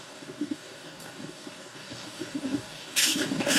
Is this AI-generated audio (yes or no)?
yes